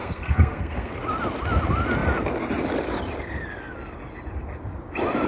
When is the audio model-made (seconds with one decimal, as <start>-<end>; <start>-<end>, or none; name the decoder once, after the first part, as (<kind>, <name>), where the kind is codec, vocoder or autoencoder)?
0.0-1.0 (codec, SNAC)